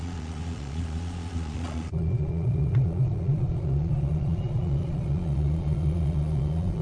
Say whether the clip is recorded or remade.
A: remade